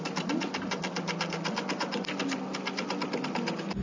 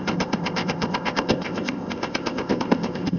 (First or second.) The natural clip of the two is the first